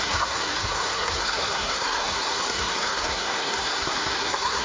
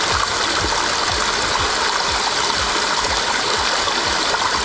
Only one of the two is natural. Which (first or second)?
second